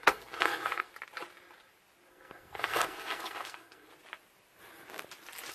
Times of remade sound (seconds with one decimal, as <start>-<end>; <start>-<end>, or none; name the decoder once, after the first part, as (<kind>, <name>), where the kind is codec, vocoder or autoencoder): 0.0-0.9 (codec, SNAC); 2.1-3.9